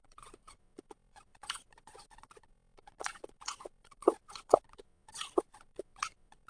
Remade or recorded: remade